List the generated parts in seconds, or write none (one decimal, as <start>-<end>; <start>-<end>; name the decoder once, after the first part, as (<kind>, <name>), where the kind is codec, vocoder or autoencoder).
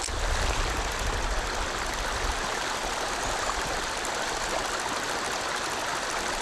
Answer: none